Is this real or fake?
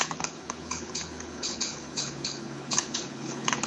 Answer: fake